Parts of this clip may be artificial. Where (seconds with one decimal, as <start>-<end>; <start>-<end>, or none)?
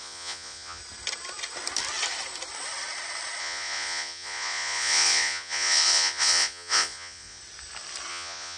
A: 0.0-0.8; 3.4-7.4; 8.1-8.6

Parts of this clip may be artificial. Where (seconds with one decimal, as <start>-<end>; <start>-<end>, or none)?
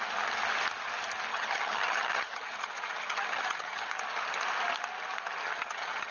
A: 1.3-3.9; 5.4-6.1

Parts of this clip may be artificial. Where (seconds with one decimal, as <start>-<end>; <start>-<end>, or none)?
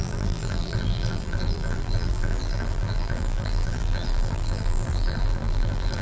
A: 0.0-6.0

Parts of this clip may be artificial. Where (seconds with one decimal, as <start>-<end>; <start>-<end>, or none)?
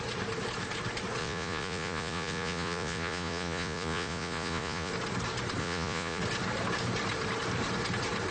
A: 1.2-4.9; 5.6-6.2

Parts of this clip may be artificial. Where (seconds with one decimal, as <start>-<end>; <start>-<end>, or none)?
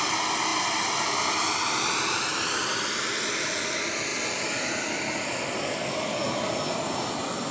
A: none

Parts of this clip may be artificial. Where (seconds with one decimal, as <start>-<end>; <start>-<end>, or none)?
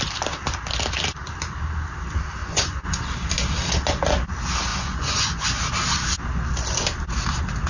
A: 2.4-3.0; 4.7-5.6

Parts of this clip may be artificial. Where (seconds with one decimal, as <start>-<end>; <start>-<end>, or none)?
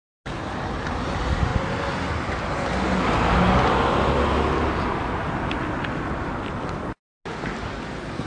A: none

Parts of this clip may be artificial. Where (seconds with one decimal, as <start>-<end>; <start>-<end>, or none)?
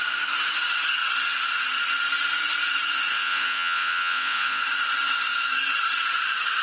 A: 3.1-4.6